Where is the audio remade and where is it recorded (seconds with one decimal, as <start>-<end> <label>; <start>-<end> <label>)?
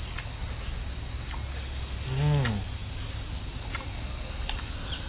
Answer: 0.0-2.8 recorded; 2.8-3.9 remade; 3.9-5.1 recorded